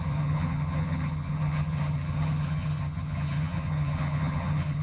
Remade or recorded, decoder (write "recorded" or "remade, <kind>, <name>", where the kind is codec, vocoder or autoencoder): remade, vocoder, HiFi-GAN